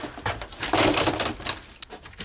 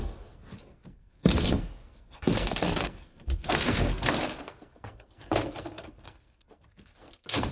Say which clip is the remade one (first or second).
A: second